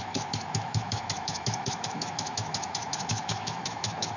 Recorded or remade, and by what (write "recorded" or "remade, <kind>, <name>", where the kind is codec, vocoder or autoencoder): remade, autoencoder, DAC-VAE